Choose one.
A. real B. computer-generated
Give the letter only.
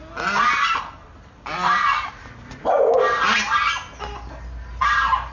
A